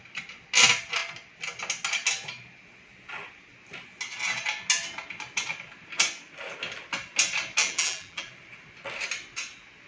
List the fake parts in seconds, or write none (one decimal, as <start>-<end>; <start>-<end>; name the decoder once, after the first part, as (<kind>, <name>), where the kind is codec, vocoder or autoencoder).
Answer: 7.6-8.3 (vocoder, BigVGAN v2)